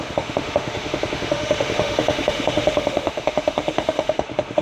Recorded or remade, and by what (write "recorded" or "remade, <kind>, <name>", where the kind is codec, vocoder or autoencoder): remade, autoencoder, DAC-VAE